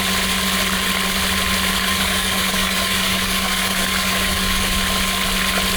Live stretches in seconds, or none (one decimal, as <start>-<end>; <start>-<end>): 0.0-1.7; 4.8-5.8